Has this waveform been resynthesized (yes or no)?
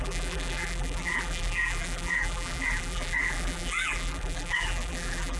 yes